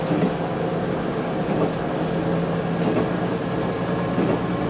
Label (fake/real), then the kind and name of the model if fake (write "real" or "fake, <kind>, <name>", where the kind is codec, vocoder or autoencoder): real